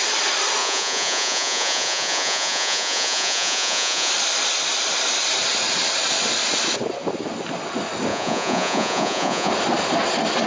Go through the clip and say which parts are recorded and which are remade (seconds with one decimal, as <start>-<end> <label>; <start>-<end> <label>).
0.0-0.6 recorded; 0.6-4.1 remade; 4.1-8.1 recorded; 8.1-9.5 remade; 9.5-10.5 recorded